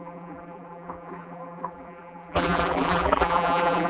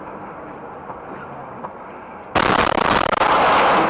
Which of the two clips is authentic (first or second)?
second